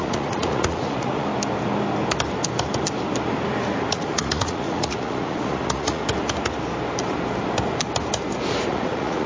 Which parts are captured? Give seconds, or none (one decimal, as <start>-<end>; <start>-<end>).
1.3-3.9; 6.0-8.7